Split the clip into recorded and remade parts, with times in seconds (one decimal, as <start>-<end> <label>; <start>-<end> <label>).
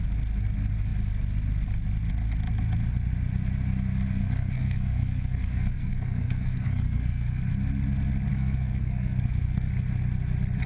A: 0.0-4.2 recorded; 4.2-7.4 remade; 7.4-8.3 recorded; 8.3-9.7 remade; 9.7-10.7 recorded